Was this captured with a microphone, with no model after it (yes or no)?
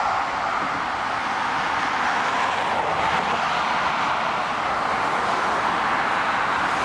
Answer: yes